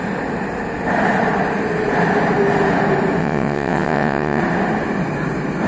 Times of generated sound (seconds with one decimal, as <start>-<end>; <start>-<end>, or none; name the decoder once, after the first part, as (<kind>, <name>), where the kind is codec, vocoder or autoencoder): 3.2-4.4 (vocoder, WaveNeXt)